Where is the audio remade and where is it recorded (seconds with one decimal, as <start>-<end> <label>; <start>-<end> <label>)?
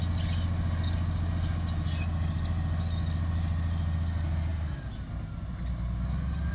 0.0-6.5 recorded